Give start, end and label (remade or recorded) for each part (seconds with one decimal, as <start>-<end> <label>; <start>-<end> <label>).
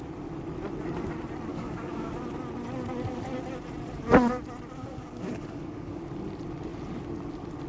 0.0-1.5 recorded; 1.5-2.1 remade; 2.1-4.8 recorded; 4.8-6.0 remade; 6.0-7.7 recorded